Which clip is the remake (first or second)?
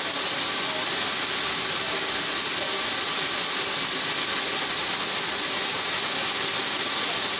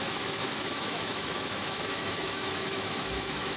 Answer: second